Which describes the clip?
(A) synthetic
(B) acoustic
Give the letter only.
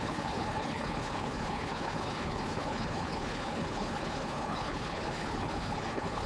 A